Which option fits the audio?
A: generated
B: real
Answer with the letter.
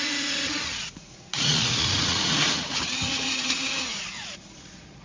A